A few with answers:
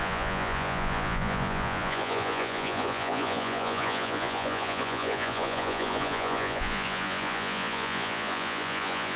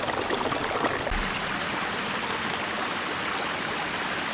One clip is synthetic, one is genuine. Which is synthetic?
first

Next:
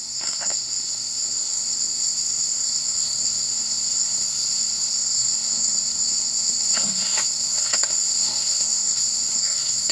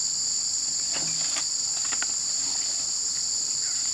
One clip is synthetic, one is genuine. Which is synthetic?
first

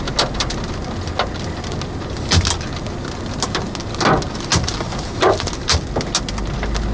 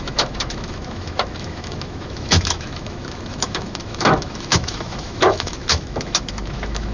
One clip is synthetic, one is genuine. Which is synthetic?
second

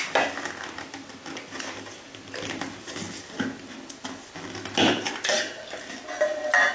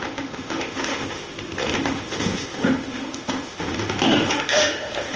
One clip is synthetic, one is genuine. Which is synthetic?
second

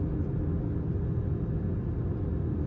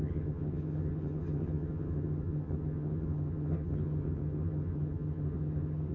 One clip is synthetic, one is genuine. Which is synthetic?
second